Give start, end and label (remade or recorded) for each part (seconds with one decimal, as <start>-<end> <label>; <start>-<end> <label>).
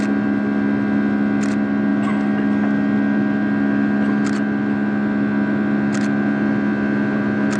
0.0-7.6 recorded